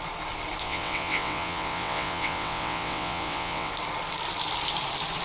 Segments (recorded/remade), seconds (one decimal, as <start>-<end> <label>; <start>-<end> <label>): 0.0-0.6 recorded; 0.6-3.7 remade; 3.7-5.2 recorded